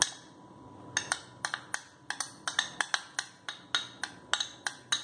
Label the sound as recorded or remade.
recorded